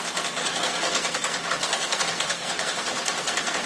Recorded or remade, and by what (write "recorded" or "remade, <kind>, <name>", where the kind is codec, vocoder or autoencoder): remade, codec, SNAC